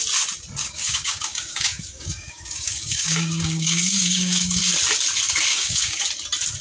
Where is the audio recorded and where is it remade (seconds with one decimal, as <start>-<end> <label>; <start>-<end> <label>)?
0.0-0.6 recorded; 0.6-4.6 remade; 4.6-5.5 recorded; 5.5-6.0 remade; 6.0-6.6 recorded